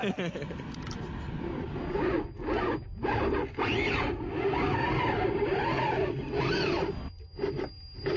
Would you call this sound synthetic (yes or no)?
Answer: no